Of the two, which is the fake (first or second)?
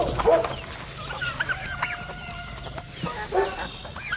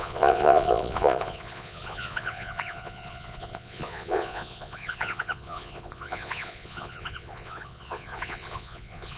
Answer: second